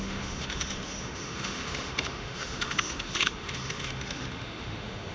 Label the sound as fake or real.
fake